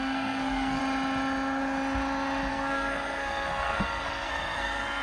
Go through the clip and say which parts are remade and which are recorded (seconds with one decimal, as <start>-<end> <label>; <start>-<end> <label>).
0.0-0.8 remade; 0.8-2.5 recorded; 2.5-5.0 remade